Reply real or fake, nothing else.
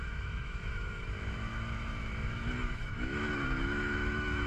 fake